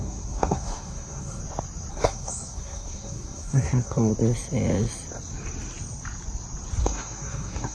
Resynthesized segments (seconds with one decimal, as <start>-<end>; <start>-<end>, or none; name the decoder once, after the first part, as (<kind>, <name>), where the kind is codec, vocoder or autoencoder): 0.0-1.4 (codec, SNAC); 1.9-4.1; 6.8-7.7